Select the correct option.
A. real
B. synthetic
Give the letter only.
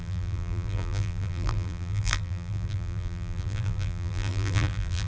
B